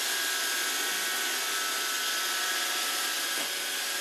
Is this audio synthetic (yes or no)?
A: no